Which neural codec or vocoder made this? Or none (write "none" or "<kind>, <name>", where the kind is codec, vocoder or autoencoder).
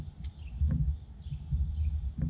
none